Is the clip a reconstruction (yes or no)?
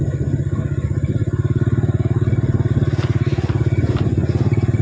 no